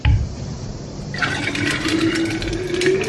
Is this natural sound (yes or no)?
yes